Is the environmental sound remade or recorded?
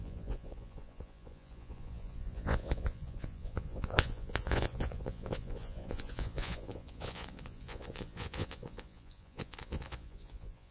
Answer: remade